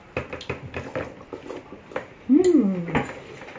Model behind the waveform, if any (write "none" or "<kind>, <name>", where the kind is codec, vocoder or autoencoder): none